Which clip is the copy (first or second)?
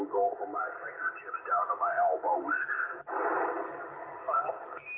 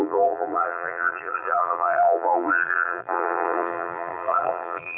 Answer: second